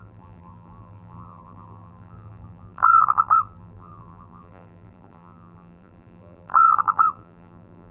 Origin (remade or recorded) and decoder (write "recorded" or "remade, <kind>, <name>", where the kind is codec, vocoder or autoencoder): remade, vocoder, BigVGAN v2